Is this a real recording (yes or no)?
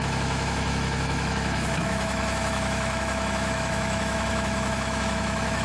no